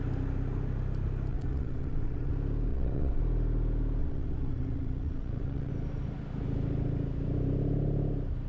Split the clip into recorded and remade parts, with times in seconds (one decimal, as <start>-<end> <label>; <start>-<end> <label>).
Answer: 0.0-1.3 recorded; 1.3-2.3 remade; 2.3-2.7 recorded; 2.7-3.2 remade; 3.2-4.0 recorded; 4.0-5.7 remade; 5.7-8.5 recorded